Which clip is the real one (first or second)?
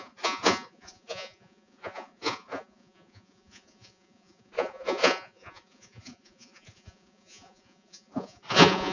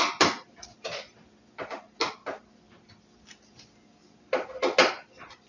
second